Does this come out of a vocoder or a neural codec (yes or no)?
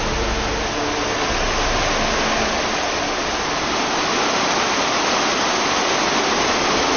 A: no